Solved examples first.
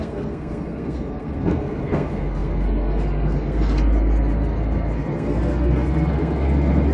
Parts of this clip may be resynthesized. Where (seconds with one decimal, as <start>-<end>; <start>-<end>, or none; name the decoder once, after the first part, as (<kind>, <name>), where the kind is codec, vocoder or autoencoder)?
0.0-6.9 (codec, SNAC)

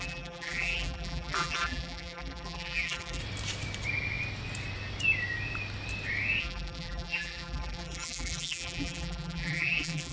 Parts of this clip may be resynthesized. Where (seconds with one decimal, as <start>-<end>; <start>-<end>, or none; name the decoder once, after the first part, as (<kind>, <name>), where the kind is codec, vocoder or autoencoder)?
0.0-3.2 (vocoder, BigVGAN v2); 6.4-10.1

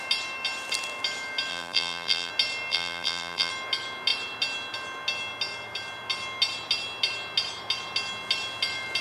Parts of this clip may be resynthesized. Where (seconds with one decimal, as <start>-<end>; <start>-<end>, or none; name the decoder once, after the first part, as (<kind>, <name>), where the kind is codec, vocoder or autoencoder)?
1.5-2.3 (vocoder, BigVGAN v2); 2.7-3.5

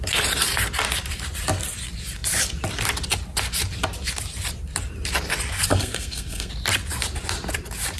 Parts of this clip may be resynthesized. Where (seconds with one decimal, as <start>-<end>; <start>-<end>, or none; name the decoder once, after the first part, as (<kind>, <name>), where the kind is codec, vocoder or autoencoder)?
5.7-6.5 (codec, SNAC)